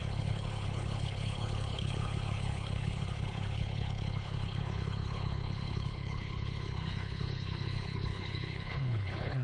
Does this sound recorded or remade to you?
remade